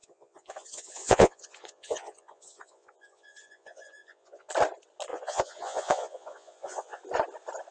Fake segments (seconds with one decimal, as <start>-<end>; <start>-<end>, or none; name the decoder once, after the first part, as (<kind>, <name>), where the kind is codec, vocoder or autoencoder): 0.0-4.5 (vocoder, Vocos); 5.1-7.0